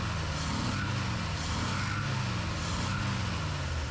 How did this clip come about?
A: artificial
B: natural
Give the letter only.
B